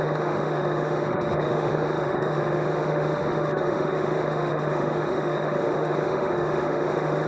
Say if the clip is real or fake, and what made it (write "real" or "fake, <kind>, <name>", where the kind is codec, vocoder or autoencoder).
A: fake, autoencoder, DAC-VAE